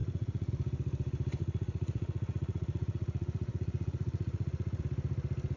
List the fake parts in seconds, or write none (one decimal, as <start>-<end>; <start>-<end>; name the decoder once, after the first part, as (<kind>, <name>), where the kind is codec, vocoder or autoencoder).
0.0-0.5 (vocoder, Vocos); 1.4-4.8